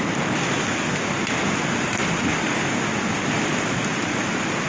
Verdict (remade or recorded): recorded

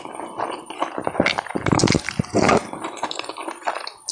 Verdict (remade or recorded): recorded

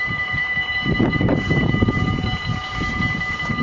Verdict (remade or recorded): remade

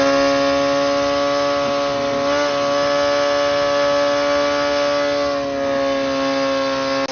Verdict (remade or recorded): recorded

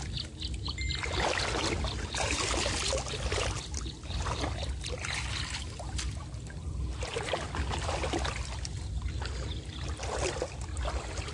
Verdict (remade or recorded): recorded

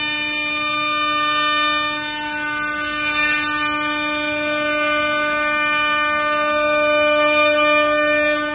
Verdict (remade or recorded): recorded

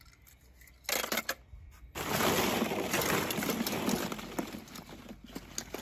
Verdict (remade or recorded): recorded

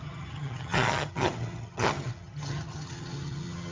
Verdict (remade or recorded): remade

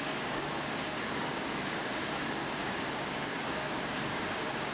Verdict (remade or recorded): remade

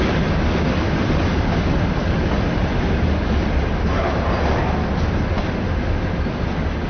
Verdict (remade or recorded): recorded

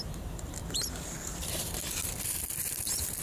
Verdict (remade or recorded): remade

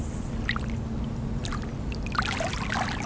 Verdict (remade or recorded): recorded